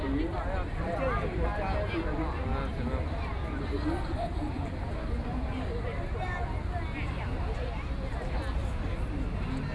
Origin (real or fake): real